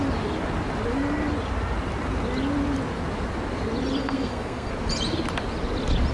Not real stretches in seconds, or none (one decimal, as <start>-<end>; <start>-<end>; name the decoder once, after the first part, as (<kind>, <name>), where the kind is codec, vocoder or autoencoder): 4.0-4.7 (codec, SNAC)